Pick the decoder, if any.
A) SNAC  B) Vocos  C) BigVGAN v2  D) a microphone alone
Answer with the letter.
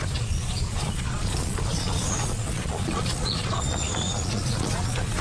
B